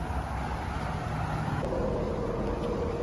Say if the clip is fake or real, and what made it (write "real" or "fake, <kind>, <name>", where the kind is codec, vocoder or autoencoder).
real